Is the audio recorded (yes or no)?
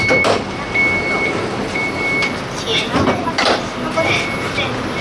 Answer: yes